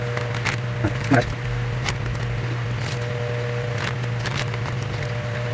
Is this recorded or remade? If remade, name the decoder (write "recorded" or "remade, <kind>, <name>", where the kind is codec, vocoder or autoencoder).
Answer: recorded